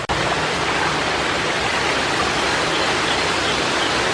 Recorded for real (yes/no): yes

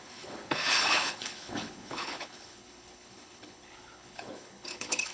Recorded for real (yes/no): no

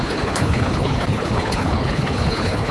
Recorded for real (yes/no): no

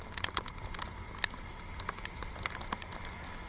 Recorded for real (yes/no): yes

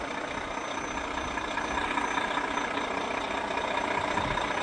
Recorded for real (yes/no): yes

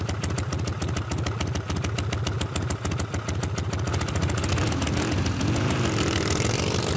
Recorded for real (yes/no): yes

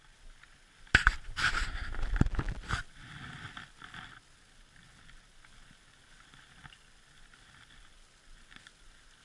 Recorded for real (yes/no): yes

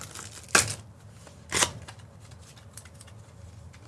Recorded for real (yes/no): yes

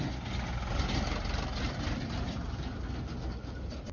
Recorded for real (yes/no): yes